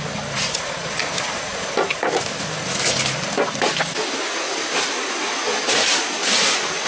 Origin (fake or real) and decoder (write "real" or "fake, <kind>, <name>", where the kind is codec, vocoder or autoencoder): real